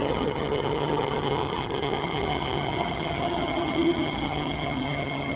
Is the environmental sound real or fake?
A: fake